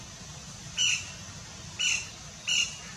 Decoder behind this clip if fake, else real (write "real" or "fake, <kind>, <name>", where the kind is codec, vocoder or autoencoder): real